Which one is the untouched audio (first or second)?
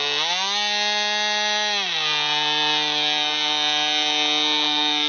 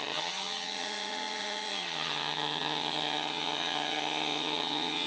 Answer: first